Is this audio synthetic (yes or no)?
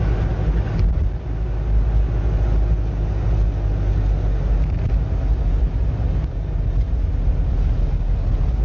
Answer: no